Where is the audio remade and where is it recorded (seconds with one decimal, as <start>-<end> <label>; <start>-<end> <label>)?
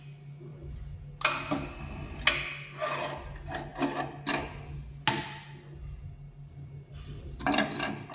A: 0.0-8.1 recorded